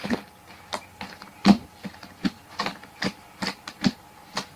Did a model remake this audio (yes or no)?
yes